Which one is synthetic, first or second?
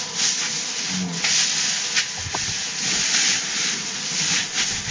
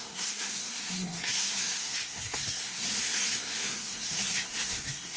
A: second